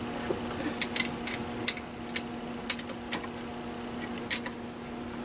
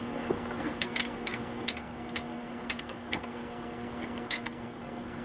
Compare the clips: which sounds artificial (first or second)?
second